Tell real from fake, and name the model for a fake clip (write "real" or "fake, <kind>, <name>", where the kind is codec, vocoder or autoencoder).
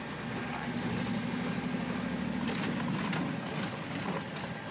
real